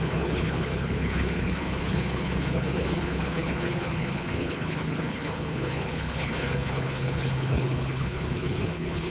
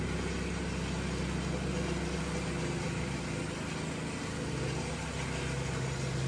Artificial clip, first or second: first